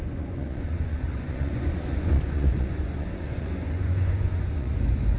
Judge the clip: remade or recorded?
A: remade